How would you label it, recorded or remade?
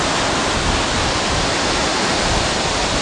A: recorded